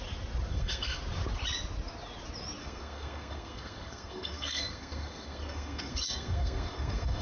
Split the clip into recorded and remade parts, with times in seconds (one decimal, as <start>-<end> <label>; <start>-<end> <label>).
0.0-0.5 recorded; 0.5-1.0 remade; 1.0-2.6 recorded; 2.6-7.2 remade